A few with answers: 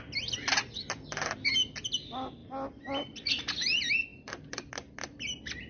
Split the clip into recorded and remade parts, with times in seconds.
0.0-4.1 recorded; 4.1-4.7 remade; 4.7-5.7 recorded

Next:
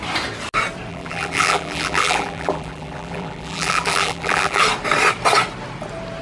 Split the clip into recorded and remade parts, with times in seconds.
0.0-0.9 recorded; 0.9-4.6 remade; 4.6-6.2 recorded

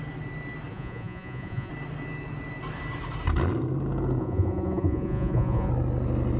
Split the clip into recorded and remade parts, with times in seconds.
0.0-0.7 recorded; 0.7-1.7 remade; 1.7-4.2 recorded; 4.2-5.7 remade; 5.7-6.4 recorded

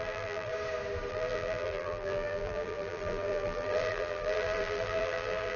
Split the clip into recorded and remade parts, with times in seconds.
0.0-0.5 remade; 0.5-1.1 recorded; 1.1-5.6 remade